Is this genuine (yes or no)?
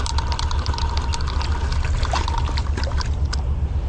yes